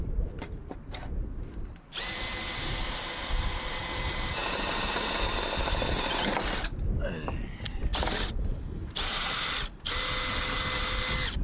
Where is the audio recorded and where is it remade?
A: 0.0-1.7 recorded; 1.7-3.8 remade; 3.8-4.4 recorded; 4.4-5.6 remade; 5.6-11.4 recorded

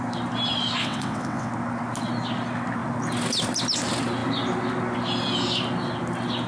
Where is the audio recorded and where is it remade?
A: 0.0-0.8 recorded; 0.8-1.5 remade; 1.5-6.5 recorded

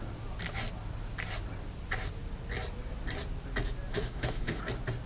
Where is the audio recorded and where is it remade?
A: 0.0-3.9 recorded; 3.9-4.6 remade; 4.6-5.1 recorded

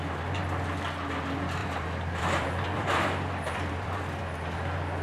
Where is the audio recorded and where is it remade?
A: 0.0-1.6 recorded; 1.6-4.2 remade; 4.2-5.0 recorded

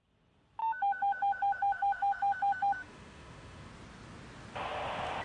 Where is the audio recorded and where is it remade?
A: 0.0-0.6 recorded; 0.6-3.7 remade; 3.7-5.2 recorded